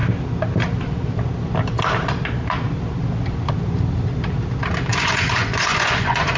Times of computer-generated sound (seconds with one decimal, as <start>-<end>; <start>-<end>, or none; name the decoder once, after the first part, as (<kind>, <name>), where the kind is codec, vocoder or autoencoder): 4.9-6.4 (vocoder, Vocos)